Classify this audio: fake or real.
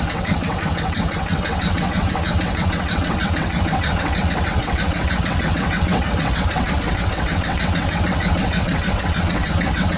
fake